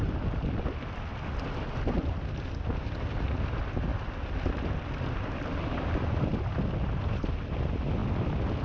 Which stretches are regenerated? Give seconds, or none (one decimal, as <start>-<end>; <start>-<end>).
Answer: none